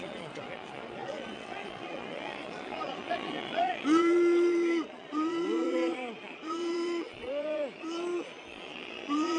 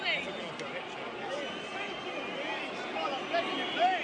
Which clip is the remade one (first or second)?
first